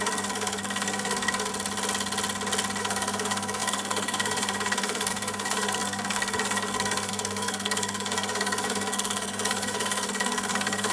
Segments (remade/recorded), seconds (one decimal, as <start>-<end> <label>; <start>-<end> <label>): 0.0-1.5 remade; 1.5-2.8 recorded; 2.8-10.9 remade